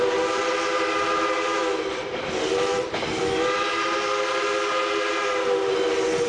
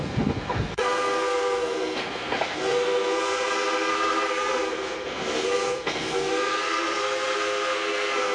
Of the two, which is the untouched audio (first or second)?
first